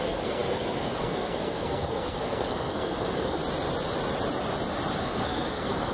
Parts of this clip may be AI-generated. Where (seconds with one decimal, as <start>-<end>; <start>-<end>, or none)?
0.0-3.4; 5.0-5.9